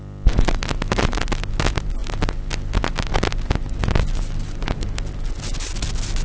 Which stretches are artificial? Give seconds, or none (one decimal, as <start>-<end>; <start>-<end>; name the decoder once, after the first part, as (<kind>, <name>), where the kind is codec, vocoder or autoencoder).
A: none